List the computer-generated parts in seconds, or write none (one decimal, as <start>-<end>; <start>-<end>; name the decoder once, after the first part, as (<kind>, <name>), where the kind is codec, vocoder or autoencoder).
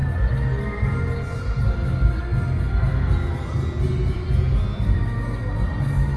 none